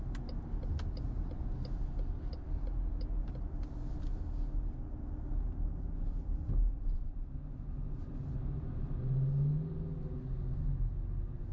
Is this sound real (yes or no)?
yes